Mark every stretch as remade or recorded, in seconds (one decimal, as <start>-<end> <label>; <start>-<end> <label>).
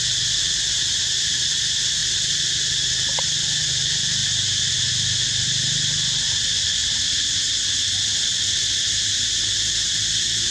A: 0.0-10.5 recorded